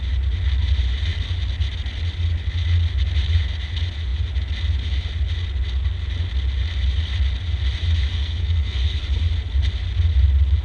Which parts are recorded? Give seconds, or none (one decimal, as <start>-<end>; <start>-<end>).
0.0-8.1; 9.0-10.6